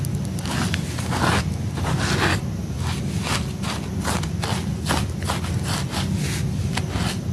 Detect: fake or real real